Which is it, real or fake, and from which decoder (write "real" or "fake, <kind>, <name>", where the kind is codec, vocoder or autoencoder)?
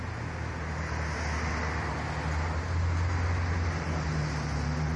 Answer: real